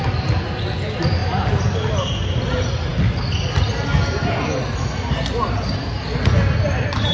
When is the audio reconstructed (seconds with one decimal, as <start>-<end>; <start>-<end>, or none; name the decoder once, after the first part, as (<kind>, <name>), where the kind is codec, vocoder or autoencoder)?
none